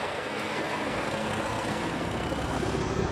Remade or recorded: remade